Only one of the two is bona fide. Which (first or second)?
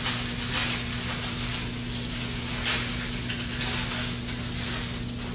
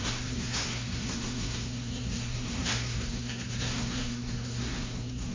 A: first